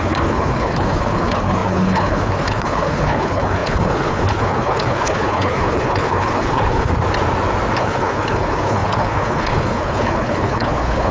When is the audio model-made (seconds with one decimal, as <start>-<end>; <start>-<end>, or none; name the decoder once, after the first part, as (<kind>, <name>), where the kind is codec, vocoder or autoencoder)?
0.0-6.9 (codec, HILCodec); 7.8-11.1